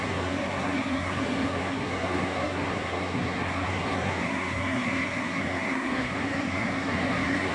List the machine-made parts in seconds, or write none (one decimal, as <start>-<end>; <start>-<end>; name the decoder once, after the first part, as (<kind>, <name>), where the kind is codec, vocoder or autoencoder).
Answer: 0.0-7.5 (codec, SNAC)